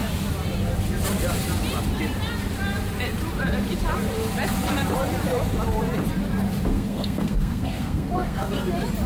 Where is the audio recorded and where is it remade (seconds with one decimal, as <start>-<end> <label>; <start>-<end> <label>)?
0.0-6.7 recorded; 6.7-8.7 remade; 8.7-9.1 recorded

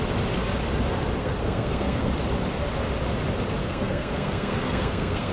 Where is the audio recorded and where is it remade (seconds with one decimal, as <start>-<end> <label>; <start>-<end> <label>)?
0.0-1.2 recorded; 1.2-2.1 remade; 2.1-3.6 recorded; 3.6-5.3 remade

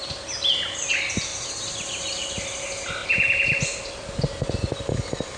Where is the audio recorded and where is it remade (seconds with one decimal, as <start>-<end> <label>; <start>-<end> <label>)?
0.0-5.4 recorded

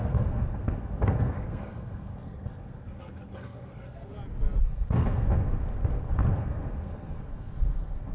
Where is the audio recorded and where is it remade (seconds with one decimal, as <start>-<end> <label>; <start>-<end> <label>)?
0.0-4.1 remade; 4.1-4.6 recorded; 4.6-8.1 remade